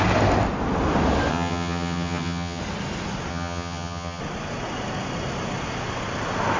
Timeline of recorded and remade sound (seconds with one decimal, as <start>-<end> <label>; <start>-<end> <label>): 0.0-1.3 recorded; 1.3-2.6 remade; 2.6-3.3 recorded; 3.3-4.2 remade; 4.2-6.6 recorded